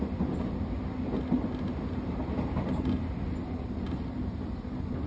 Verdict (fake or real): real